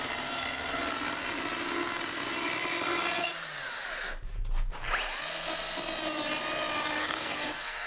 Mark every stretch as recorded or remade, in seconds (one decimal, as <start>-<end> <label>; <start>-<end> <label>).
0.0-7.0 recorded; 7.0-7.9 remade